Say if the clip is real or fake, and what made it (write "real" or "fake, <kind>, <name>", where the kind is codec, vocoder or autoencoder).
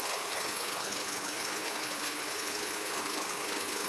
fake, codec, HILCodec